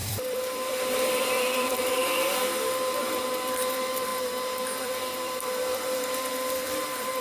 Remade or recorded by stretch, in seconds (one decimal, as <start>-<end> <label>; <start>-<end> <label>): 0.0-2.0 remade; 2.0-3.0 recorded; 3.0-4.1 remade; 4.1-4.8 recorded; 4.8-7.2 remade